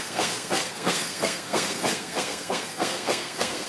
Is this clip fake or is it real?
fake